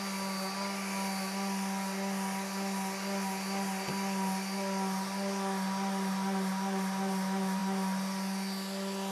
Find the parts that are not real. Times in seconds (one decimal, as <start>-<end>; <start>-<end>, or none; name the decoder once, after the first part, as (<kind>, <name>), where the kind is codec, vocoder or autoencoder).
none